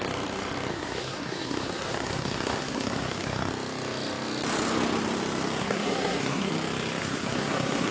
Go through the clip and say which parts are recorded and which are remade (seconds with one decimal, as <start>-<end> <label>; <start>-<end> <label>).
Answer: 0.0-0.7 recorded; 0.7-3.5 remade; 3.5-5.6 recorded; 5.6-6.5 remade; 6.5-7.0 recorded; 7.0-7.9 remade